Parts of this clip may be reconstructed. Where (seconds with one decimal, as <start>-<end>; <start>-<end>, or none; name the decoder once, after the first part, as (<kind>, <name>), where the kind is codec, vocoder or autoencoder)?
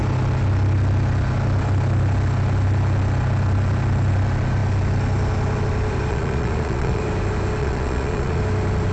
6.1-7.0 (vocoder, Vocos); 7.6-8.4